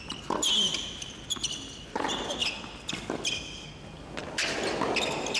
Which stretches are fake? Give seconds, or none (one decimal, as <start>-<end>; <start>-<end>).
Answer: none